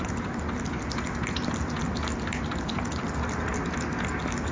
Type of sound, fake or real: real